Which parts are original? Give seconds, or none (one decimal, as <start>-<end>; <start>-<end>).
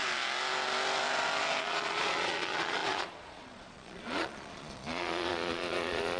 0.0-1.6